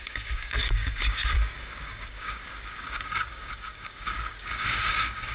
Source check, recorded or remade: remade